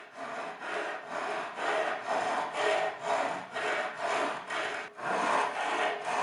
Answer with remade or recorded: recorded